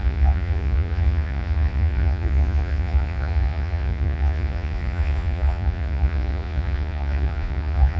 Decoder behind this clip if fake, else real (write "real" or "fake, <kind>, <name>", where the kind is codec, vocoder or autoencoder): fake, vocoder, Vocos